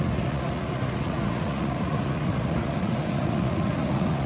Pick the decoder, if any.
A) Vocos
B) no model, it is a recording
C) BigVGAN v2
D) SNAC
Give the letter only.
A